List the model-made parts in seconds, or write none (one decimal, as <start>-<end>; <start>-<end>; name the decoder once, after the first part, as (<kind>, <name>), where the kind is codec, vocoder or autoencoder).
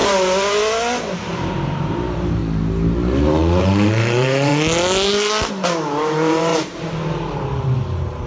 1.3-2.4 (vocoder, BigVGAN v2); 3.6-4.5; 5.5-8.3